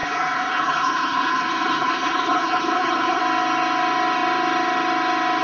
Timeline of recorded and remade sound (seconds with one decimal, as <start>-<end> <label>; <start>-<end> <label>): 0.0-3.2 remade; 3.2-5.4 recorded